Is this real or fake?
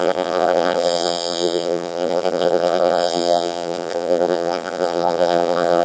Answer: fake